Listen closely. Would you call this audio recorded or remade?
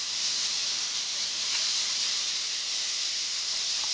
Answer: remade